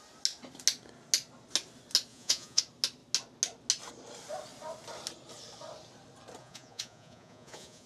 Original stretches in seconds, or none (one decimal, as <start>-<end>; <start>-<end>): 0.0-2.1; 2.6-6.4

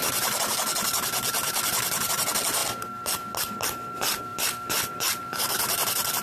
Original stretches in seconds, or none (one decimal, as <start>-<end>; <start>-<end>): 0.0-4.3; 4.9-6.2